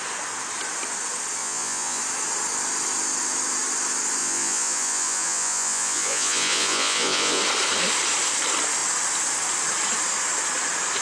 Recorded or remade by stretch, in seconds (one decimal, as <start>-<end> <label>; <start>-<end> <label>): 0.0-1.4 recorded; 1.4-2.0 remade; 2.0-4.2 recorded; 4.2-7.4 remade; 7.4-11.0 recorded